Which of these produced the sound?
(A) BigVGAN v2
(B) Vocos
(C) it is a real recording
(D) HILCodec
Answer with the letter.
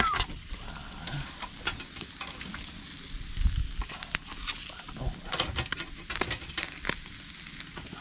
C